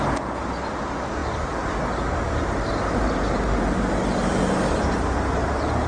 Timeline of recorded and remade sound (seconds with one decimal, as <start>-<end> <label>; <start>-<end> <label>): 0.0-5.9 recorded

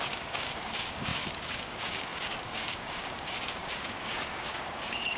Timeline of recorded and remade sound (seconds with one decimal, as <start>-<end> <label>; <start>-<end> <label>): 0.0-5.2 remade

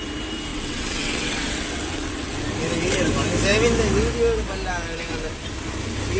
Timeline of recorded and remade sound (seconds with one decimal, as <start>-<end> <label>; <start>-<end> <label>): 0.0-0.5 recorded; 0.5-2.4 remade; 2.4-6.2 recorded